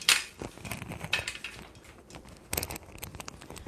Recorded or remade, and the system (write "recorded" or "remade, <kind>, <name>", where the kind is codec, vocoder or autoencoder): recorded